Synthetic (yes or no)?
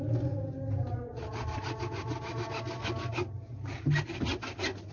no